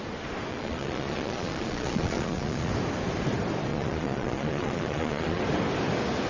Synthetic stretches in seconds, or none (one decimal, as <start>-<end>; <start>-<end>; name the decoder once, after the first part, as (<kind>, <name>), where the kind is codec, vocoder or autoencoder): 0.5-2.7 (vocoder, Vocos); 3.7-5.4